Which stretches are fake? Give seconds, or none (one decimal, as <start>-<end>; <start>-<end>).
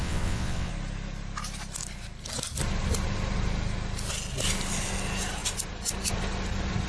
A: 0.0-0.7